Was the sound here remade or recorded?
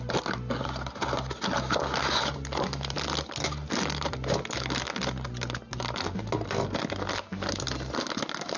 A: recorded